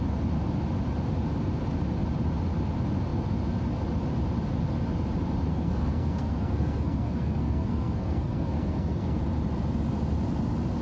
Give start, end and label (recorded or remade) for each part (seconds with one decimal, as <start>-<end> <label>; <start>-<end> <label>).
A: 0.0-5.5 recorded; 5.5-9.2 remade; 9.2-10.8 recorded